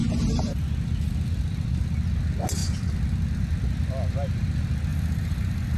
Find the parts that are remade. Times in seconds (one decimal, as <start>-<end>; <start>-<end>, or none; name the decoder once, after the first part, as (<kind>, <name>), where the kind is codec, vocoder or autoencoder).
0.0-0.6 (vocoder, BigVGAN v2); 4.9-5.8